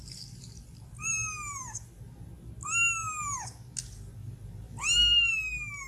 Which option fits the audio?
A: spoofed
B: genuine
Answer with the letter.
B